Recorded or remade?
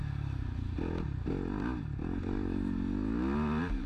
recorded